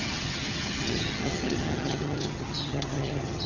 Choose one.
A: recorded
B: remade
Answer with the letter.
B